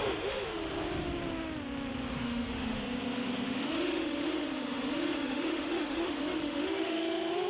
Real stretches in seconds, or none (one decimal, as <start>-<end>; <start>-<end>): 0.6-2.1